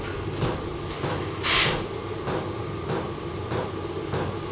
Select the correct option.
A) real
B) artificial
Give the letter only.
A